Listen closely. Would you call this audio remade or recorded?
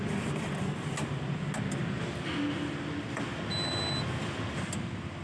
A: recorded